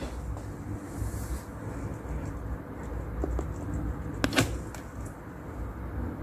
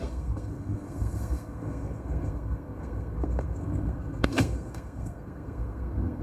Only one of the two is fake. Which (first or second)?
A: second